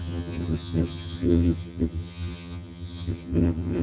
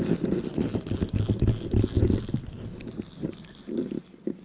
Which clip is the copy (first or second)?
first